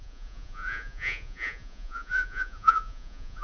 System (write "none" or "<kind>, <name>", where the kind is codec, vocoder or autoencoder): vocoder, Vocos